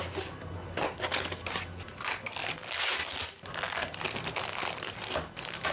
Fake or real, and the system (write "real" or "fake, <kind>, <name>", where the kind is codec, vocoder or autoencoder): real